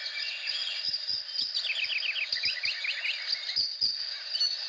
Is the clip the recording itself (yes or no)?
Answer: yes